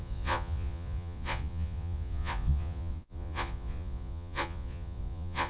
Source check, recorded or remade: remade